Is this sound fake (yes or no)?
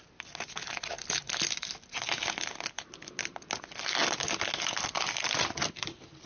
no